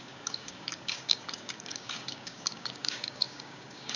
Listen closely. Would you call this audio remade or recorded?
remade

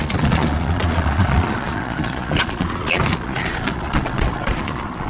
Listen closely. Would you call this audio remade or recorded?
remade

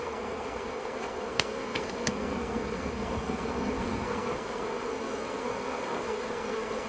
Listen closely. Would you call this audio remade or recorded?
remade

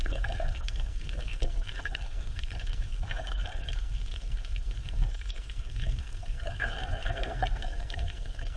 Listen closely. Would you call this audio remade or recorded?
remade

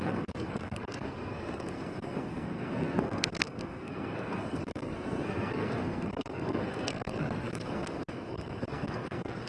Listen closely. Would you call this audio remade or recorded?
remade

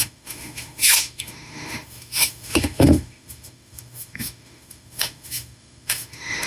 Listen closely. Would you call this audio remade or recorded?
remade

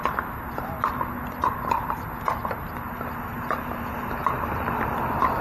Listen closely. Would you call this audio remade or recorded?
recorded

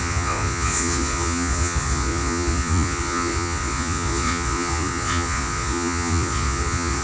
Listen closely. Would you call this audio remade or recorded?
remade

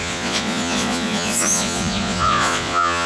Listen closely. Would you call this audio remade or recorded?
remade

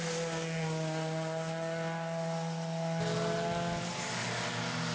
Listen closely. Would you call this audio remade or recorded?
recorded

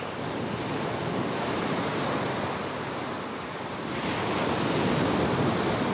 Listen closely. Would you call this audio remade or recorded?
recorded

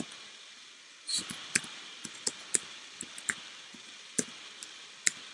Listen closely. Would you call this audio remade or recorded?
remade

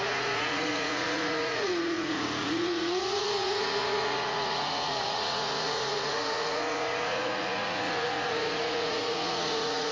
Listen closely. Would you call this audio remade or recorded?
remade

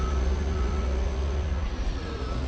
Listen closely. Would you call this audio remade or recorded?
remade